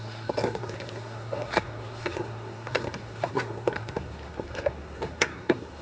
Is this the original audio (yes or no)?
no